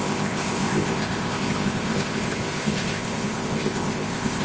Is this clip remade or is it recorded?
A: remade